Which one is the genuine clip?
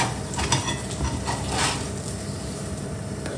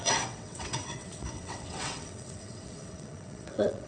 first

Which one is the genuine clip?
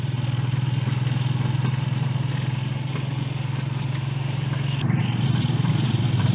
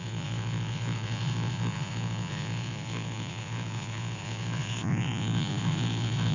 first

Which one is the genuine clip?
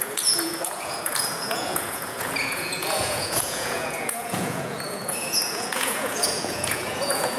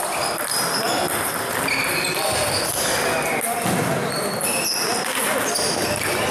second